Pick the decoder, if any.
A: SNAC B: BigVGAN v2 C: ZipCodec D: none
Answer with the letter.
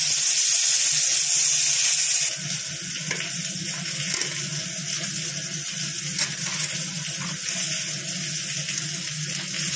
D